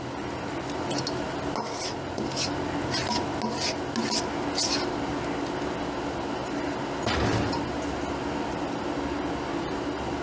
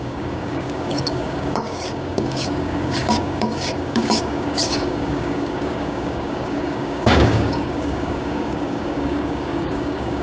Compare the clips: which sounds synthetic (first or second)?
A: second